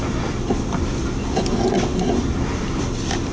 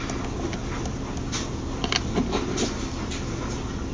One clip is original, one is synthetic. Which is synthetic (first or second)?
first